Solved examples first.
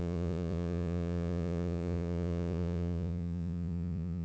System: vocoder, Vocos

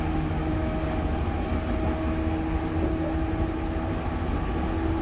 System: none